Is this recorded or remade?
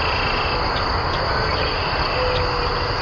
recorded